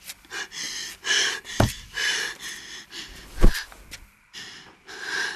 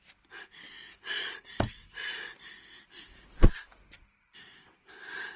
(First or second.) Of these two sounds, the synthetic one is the first